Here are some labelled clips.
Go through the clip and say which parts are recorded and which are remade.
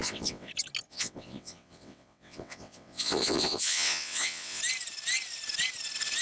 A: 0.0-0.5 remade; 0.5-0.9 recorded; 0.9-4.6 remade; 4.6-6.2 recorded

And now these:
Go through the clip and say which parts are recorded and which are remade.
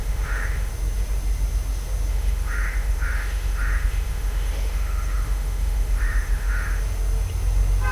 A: 0.0-0.7 remade; 0.7-2.1 recorded; 2.1-6.8 remade; 6.8-7.9 recorded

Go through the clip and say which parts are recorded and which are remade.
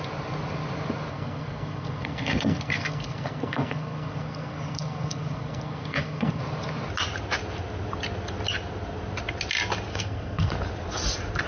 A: 0.0-1.1 recorded; 1.1-6.4 remade; 6.4-9.9 recorded; 9.9-10.5 remade; 10.5-11.5 recorded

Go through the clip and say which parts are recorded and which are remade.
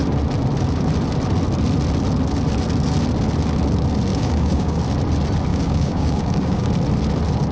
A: 0.0-4.1 recorded; 4.1-4.8 remade; 4.8-5.5 recorded; 5.5-6.7 remade; 6.7-7.5 recorded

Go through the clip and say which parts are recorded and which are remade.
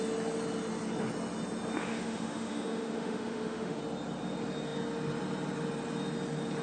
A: 0.0-1.8 recorded; 1.8-3.8 remade; 3.8-6.6 recorded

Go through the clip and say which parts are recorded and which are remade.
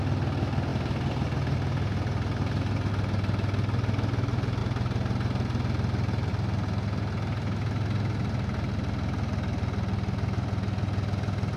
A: 0.0-11.6 recorded